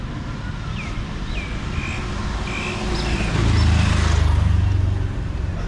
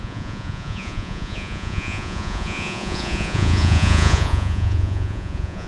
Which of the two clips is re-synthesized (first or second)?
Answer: second